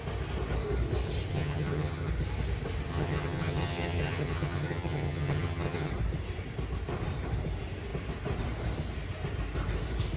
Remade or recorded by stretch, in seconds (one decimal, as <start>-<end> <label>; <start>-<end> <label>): 0.0-1.3 recorded; 1.3-2.1 remade; 2.1-2.9 recorded; 2.9-5.9 remade; 5.9-10.2 recorded

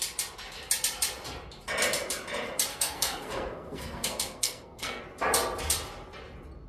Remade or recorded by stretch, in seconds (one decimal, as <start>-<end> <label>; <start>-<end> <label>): 0.0-2.7 recorded; 2.7-5.0 remade; 5.0-6.7 recorded

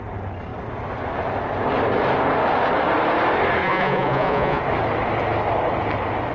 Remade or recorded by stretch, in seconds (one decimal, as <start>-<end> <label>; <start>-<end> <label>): 0.0-3.6 recorded; 3.6-4.6 remade; 4.6-6.3 recorded

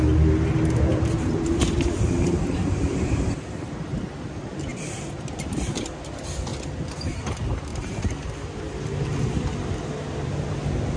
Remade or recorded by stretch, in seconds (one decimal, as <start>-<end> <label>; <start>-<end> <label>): 0.0-0.9 recorded; 0.9-4.0 remade; 4.0-4.7 recorded; 4.7-5.5 remade; 5.5-11.0 recorded

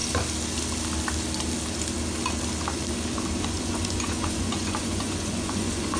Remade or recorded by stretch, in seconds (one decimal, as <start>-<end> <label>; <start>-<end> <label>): 0.0-3.4 recorded; 3.4-6.0 remade

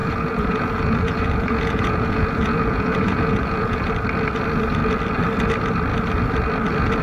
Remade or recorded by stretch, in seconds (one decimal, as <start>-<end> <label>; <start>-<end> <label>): 0.0-3.9 remade; 3.9-7.0 recorded